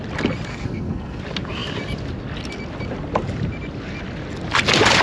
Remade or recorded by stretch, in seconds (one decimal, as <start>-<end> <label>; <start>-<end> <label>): 0.0-0.5 recorded; 0.5-1.2 remade; 1.2-5.0 recorded